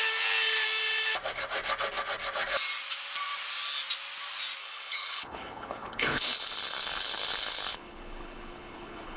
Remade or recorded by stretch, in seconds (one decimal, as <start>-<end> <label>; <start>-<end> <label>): 0.0-4.6 recorded; 4.6-9.2 remade